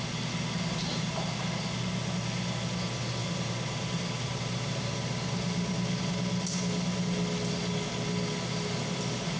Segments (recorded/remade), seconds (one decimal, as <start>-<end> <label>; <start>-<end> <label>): 0.0-0.8 recorded; 0.8-1.4 remade; 1.4-3.2 recorded; 3.2-5.7 remade; 5.7-9.4 recorded

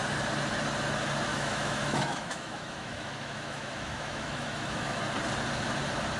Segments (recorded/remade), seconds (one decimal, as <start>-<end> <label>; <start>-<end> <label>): 0.0-1.3 recorded; 1.3-5.0 remade; 5.0-6.2 recorded

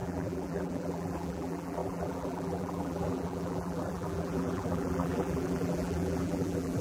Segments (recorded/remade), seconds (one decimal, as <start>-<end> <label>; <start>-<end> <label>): 0.0-6.8 remade

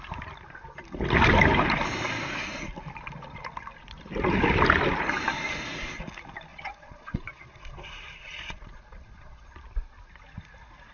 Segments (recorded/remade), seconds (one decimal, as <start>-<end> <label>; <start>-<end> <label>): 0.0-6.5 recorded; 6.5-9.5 remade; 9.5-10.9 recorded

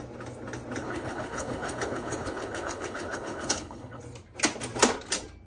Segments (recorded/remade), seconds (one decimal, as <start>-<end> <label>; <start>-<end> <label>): 0.0-0.8 recorded; 0.8-4.0 remade; 4.0-5.5 recorded

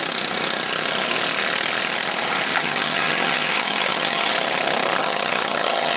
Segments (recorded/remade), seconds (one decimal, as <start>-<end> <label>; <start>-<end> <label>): 0.0-2.6 recorded; 2.6-4.3 remade; 4.3-5.0 recorded; 5.0-6.0 remade